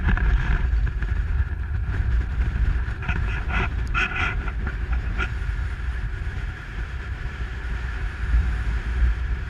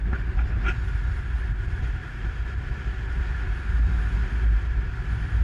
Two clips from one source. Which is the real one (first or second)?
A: second